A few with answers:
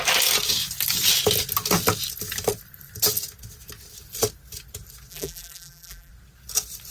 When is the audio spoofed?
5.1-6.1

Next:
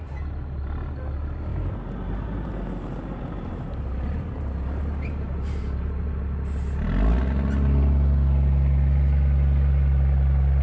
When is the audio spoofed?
1.5-6.1

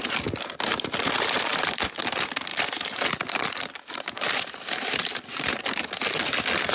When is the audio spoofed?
1.5-2.0; 2.5-5.6